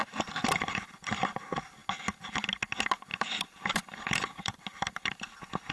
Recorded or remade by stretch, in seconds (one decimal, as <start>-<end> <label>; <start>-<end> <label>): 0.0-0.6 remade; 0.6-3.1 recorded; 3.1-4.6 remade; 4.6-5.7 recorded